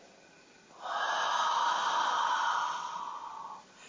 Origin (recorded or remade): recorded